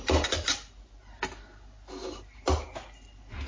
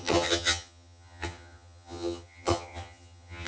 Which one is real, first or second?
first